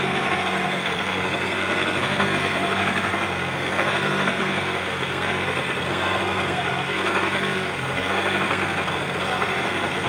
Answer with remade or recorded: remade